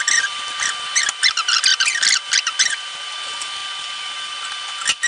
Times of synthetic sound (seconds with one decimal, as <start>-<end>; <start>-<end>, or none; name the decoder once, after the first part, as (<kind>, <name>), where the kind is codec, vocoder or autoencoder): none